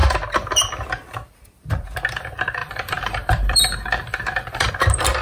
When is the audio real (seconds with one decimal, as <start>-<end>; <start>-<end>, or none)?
0.0-2.6; 4.7-5.2